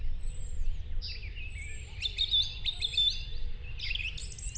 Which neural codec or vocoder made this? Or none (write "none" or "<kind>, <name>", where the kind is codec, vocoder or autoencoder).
none